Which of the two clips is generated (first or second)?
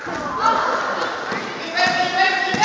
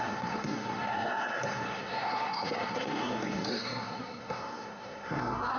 second